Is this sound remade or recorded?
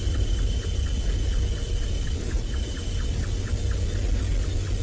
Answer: recorded